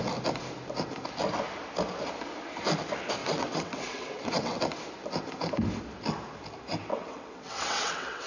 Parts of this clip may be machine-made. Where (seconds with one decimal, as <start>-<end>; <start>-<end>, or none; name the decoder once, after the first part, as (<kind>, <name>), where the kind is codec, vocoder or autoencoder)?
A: 3.2-4.6 (vocoder, WaveNeXt); 6.9-8.3